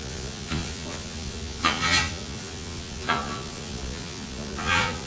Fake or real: fake